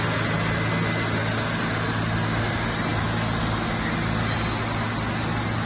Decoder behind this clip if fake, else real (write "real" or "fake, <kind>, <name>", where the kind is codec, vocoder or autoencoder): real